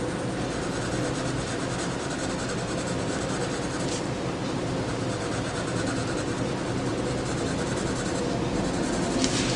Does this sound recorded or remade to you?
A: recorded